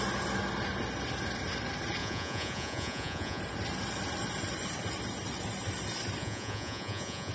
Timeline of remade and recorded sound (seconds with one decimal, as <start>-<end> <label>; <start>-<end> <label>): 0.0-2.0 recorded; 2.0-3.4 remade; 3.4-6.2 recorded; 6.2-7.3 remade